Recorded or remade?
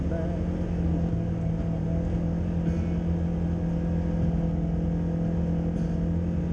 recorded